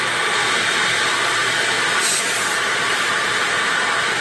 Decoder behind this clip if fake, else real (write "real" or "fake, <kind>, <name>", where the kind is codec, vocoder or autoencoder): real